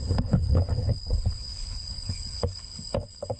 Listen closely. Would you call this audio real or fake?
fake